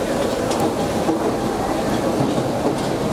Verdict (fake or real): real